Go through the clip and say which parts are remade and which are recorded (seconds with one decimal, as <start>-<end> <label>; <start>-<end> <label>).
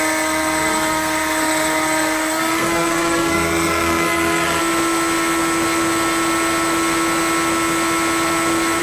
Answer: 0.0-4.6 remade; 4.6-8.8 recorded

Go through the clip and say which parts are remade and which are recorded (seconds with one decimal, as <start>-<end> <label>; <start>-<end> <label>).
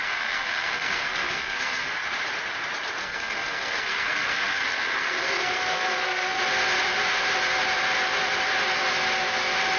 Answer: 0.0-1.9 remade; 1.9-3.0 recorded; 3.0-6.4 remade; 6.4-9.8 recorded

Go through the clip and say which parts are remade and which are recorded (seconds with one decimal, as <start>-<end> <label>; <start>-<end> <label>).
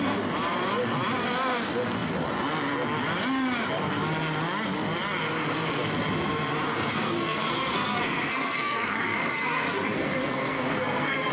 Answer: 0.0-6.7 recorded; 6.7-11.3 remade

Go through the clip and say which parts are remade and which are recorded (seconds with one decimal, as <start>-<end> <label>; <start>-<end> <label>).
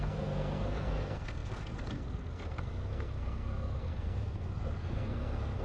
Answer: 0.0-5.6 remade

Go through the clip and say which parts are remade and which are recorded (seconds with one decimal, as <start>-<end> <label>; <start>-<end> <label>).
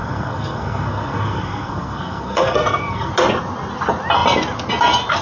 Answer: 0.0-3.1 remade; 3.1-5.2 recorded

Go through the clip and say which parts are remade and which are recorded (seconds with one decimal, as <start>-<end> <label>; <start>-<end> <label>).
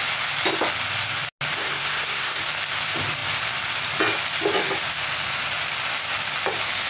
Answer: 0.0-1.6 recorded; 1.6-2.4 remade; 2.4-6.9 recorded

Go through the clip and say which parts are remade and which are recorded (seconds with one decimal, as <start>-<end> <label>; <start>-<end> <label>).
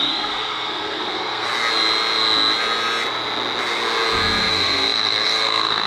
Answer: 0.0-1.5 remade; 1.5-4.5 recorded; 4.5-5.9 remade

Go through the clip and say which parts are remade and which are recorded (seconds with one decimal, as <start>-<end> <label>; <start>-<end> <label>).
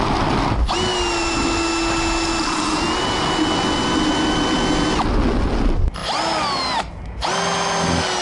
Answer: 0.0-8.2 recorded